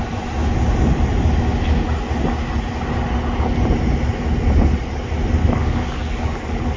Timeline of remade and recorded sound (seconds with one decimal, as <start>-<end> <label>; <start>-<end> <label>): 0.0-5.4 recorded; 5.4-6.8 remade